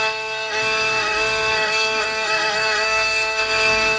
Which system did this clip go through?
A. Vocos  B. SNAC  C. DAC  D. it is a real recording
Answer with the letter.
B